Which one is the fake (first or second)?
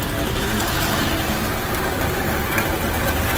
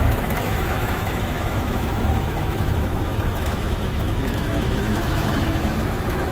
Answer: second